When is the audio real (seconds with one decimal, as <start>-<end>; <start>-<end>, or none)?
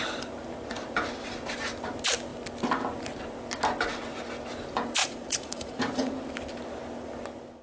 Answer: 0.0-5.0; 6.1-7.6